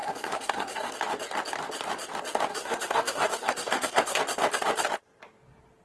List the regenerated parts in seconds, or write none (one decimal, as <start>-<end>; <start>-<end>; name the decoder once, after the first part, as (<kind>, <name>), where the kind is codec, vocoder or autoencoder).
0.0-0.9 (codec, SNAC); 2.5-4.2